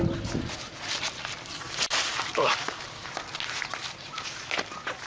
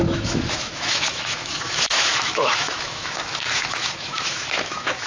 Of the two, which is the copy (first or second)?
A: second